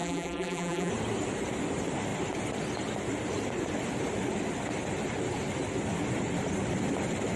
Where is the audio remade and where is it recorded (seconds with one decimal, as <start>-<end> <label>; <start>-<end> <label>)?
0.0-0.9 remade; 0.9-7.4 recorded